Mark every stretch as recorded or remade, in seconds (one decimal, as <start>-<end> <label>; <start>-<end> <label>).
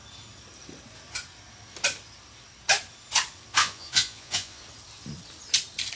0.0-3.6 recorded; 3.6-4.6 remade; 4.6-6.0 recorded